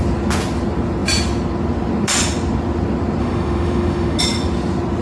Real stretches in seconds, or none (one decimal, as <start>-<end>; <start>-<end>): 0.0-3.2; 4.2-5.0